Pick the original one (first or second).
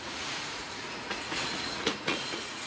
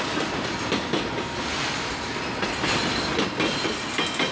second